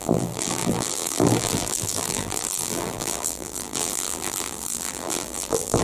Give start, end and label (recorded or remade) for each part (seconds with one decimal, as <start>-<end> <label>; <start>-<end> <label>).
0.0-5.8 remade